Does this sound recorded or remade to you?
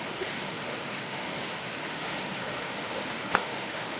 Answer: remade